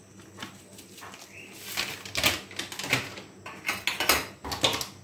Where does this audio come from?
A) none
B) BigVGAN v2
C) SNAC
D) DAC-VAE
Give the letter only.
A